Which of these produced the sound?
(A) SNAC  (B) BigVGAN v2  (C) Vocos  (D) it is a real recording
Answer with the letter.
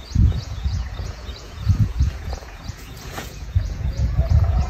C